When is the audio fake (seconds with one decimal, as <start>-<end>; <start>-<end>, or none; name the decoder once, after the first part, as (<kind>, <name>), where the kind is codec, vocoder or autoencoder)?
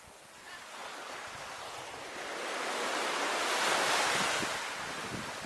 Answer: none